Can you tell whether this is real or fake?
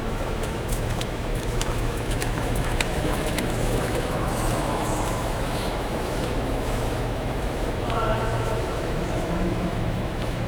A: fake